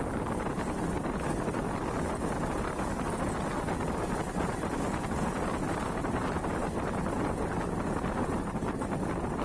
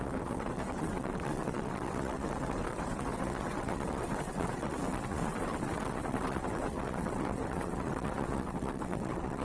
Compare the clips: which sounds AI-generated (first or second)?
second